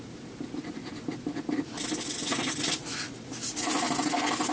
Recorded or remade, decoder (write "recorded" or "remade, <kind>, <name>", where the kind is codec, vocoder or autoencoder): recorded